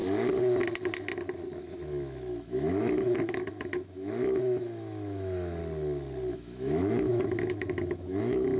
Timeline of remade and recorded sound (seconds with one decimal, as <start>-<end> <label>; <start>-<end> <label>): 0.0-1.6 recorded; 1.6-5.6 remade; 5.6-6.3 recorded; 6.3-8.6 remade